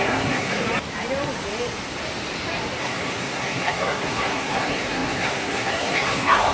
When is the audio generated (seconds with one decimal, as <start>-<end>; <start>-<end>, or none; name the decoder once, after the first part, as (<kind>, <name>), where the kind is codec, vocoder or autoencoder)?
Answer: 0.0-0.6 (codec, SNAC); 2.8-6.5